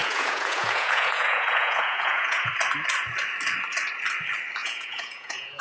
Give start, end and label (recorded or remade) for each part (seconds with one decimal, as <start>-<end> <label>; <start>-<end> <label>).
0.0-2.5 remade; 2.5-4.6 recorded; 4.6-5.6 remade